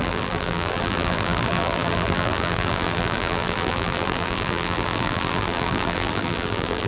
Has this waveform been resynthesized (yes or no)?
yes